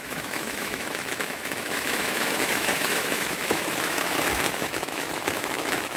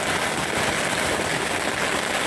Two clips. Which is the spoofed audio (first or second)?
first